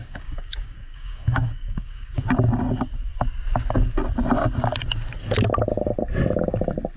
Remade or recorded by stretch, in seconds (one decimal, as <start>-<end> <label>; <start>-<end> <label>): 0.0-2.2 remade; 2.2-7.0 recorded